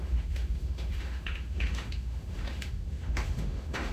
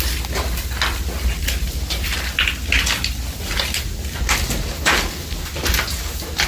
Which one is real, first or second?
second